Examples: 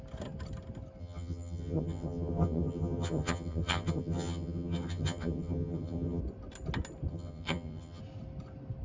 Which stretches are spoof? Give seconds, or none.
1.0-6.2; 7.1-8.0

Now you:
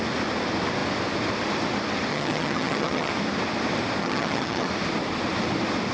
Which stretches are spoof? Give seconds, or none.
2.1-3.1; 4.0-4.7

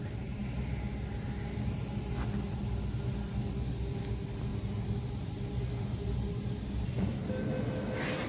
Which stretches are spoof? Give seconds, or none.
none

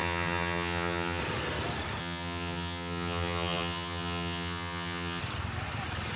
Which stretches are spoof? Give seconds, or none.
0.0-1.2; 2.0-5.2

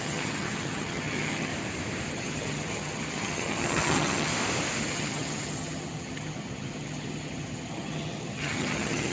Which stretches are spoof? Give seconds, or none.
0.0-1.5; 2.1-4.3; 4.8-9.1